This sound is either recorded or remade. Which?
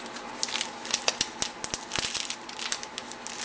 recorded